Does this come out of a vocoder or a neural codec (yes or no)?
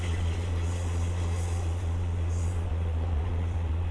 yes